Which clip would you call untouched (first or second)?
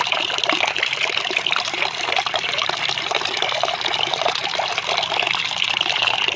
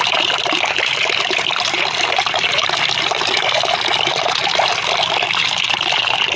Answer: second